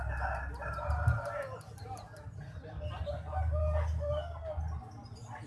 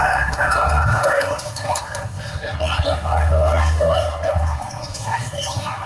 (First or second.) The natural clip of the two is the first